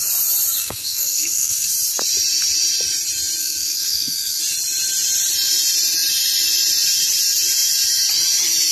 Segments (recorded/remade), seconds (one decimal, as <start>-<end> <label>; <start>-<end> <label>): 0.0-0.6 recorded; 0.6-1.7 remade; 1.7-3.4 recorded; 3.4-4.4 remade; 4.4-8.7 recorded